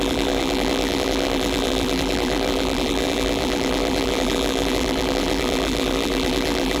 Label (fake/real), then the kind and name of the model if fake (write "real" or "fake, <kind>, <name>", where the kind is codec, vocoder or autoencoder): fake, vocoder, BigVGAN v2